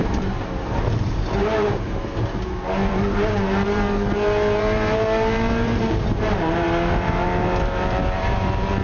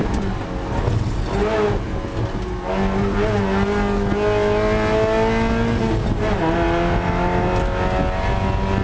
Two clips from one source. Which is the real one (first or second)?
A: second